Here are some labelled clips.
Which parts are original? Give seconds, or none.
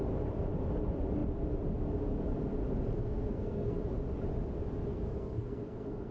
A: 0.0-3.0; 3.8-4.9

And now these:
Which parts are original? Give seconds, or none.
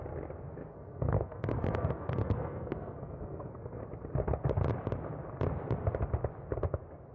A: 0.0-0.7; 3.8-7.1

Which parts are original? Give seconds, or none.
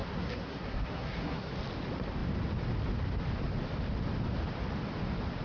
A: 1.5-5.4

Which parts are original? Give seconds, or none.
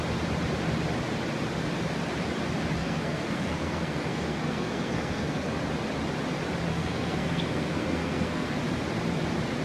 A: 0.0-2.8; 5.6-6.7; 8.6-9.6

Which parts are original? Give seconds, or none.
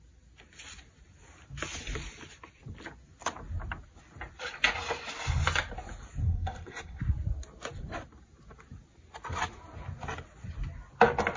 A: 0.0-6.2; 7.0-11.4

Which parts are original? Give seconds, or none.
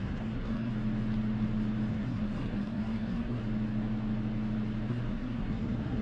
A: 0.7-1.9; 3.4-4.9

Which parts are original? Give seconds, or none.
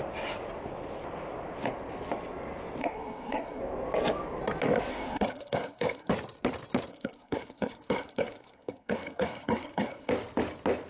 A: 0.0-2.8; 3.6-4.9; 6.1-6.9; 10.1-10.9